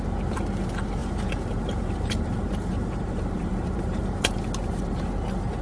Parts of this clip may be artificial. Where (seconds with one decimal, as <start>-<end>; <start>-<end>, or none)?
1.0-4.4